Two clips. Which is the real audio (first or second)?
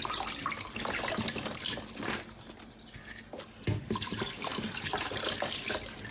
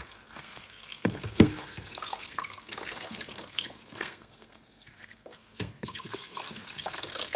first